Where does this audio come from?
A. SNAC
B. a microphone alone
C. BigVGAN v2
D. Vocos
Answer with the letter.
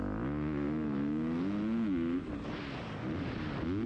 B